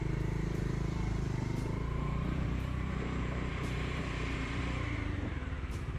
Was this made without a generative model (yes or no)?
no